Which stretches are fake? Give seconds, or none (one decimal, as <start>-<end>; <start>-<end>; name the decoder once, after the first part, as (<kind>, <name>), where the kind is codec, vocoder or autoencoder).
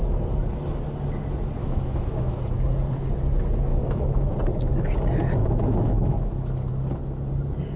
1.6-2.4 (autoencoder, DAC-VAE); 3.7-4.3; 5.4-6.7